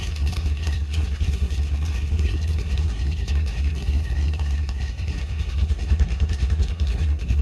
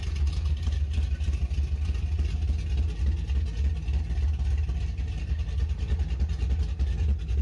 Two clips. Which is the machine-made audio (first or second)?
first